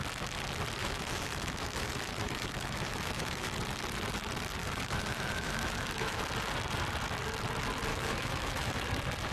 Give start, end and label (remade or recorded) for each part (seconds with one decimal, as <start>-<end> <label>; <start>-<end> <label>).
0.0-0.8 recorded; 0.8-3.5 remade; 3.5-4.6 recorded; 4.6-6.2 remade; 6.2-7.9 recorded; 7.9-8.8 remade; 8.8-9.3 recorded